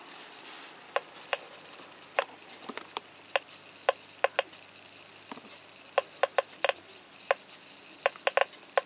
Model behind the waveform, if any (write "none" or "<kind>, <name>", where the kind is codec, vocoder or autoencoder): none